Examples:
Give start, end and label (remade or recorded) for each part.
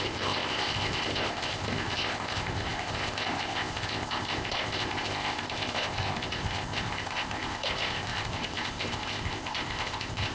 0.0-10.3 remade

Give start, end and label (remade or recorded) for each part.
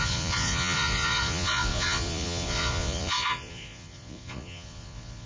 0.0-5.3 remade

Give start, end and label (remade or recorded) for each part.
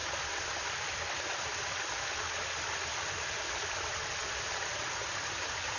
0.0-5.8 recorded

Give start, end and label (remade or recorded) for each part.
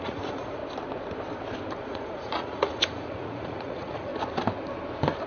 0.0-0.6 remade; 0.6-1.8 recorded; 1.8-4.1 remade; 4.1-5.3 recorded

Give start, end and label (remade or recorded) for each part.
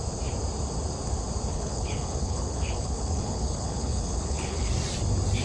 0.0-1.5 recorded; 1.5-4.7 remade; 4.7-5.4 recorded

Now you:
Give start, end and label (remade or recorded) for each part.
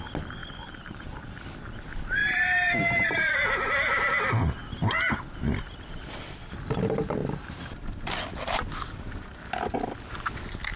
0.0-0.4 recorded; 0.4-1.4 remade; 1.4-2.2 recorded; 2.2-3.3 remade; 3.3-7.2 recorded; 7.2-8.1 remade; 8.1-10.8 recorded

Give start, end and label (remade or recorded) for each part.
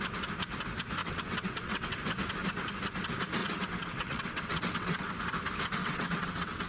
0.0-1.0 recorded; 1.0-1.9 remade; 1.9-3.4 recorded; 3.4-5.1 remade; 5.1-5.8 recorded; 5.8-6.7 remade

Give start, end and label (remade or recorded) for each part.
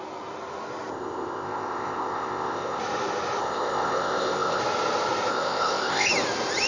0.0-0.9 recorded; 0.9-2.8 remade; 2.8-3.4 recorded; 3.4-4.6 remade; 4.6-5.3 recorded; 5.3-6.1 remade; 6.1-6.7 recorded